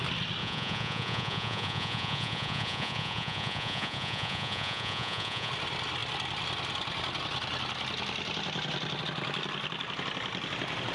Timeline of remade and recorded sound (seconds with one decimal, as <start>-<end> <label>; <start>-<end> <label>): 0.0-0.4 recorded; 0.4-5.5 remade; 5.5-10.9 recorded